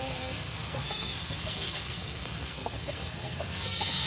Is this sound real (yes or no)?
no